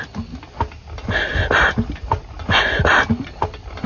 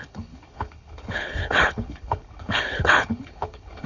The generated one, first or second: second